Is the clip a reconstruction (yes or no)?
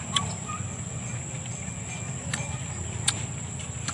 no